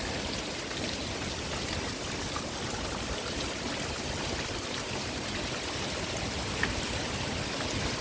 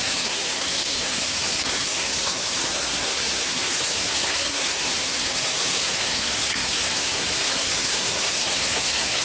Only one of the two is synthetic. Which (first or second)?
second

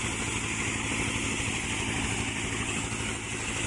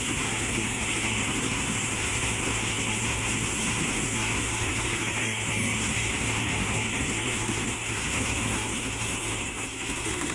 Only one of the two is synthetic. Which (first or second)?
second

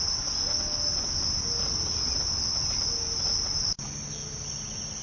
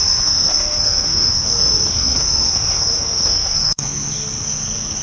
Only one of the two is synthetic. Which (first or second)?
second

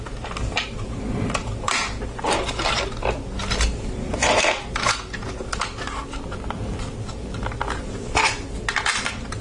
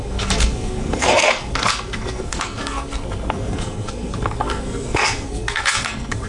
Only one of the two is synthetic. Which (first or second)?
second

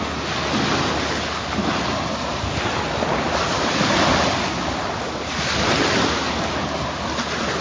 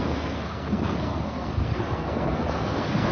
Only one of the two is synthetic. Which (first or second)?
second